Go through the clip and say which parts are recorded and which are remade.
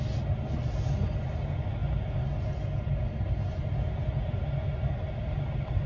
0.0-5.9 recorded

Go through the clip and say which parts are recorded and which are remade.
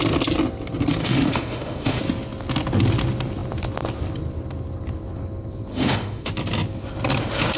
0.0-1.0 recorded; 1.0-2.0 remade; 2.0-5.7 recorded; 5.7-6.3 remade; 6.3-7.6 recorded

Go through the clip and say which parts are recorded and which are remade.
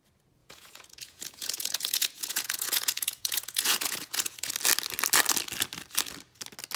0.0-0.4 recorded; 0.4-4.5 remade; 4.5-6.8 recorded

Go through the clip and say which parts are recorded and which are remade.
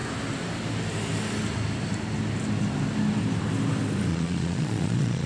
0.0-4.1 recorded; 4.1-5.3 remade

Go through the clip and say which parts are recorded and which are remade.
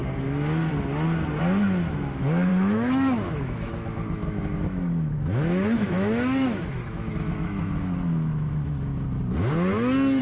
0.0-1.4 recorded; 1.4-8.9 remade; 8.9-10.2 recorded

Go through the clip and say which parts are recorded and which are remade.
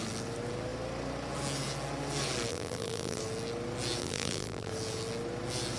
0.0-2.5 recorded; 2.5-3.2 remade; 3.2-4.0 recorded; 4.0-4.7 remade; 4.7-5.8 recorded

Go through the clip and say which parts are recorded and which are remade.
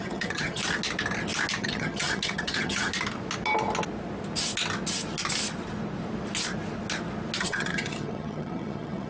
0.0-0.6 remade; 0.6-1.6 recorded; 1.6-2.9 remade; 2.9-7.4 recorded; 7.4-9.1 remade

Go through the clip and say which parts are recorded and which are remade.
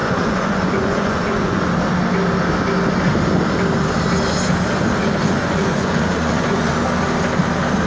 0.0-1.6 remade; 1.6-5.2 recorded; 5.2-6.7 remade; 6.7-7.9 recorded